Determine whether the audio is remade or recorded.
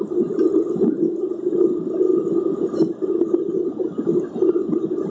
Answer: recorded